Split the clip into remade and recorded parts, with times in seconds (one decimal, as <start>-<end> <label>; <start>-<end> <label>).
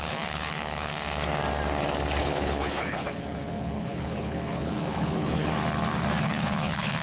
0.0-0.9 remade; 0.9-2.2 recorded; 2.2-5.5 remade; 5.5-6.2 recorded; 6.2-7.0 remade